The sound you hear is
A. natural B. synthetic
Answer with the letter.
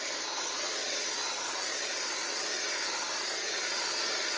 A